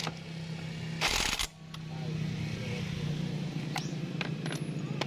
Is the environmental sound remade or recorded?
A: recorded